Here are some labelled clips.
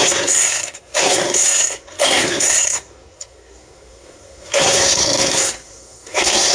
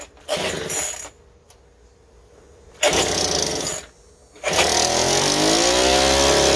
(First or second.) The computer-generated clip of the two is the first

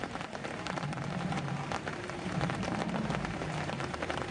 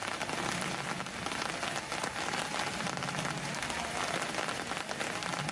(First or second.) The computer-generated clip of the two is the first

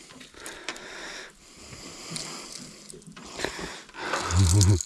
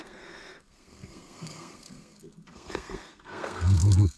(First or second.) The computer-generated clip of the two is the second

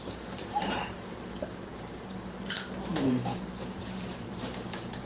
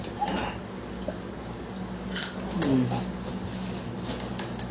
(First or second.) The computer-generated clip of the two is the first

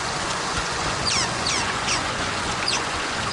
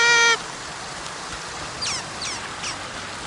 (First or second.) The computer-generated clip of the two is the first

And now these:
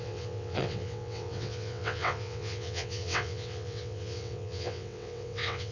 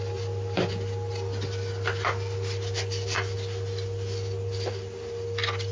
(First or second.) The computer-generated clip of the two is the first